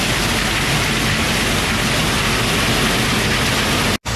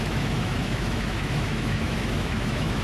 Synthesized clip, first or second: second